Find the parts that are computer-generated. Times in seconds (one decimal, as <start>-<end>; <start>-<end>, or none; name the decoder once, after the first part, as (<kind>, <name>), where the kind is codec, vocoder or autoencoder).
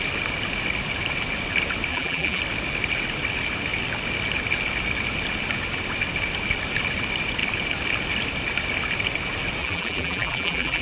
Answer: 1.9-2.4 (vocoder, BigVGAN v2); 9.6-10.8